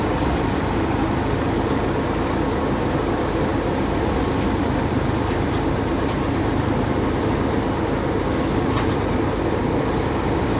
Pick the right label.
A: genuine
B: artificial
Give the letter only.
A